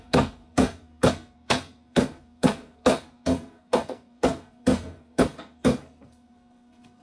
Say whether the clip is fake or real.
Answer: fake